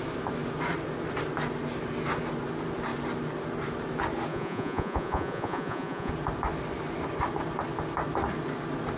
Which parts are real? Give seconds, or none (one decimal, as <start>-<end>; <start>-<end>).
0.0-4.3; 6.1-9.0